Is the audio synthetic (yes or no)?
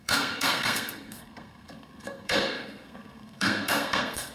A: yes